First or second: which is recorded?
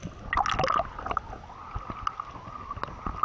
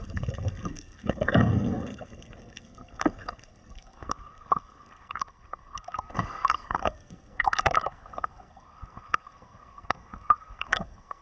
first